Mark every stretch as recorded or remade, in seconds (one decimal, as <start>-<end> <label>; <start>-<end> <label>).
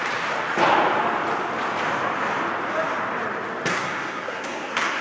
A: 0.0-3.7 recorded; 3.7-5.0 remade